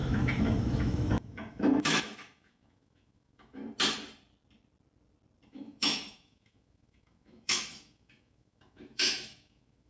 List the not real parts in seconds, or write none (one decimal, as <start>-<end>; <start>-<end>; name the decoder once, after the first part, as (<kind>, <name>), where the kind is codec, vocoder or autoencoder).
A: 0.0-3.6 (autoencoder, DAC-VAE); 5.5-9.9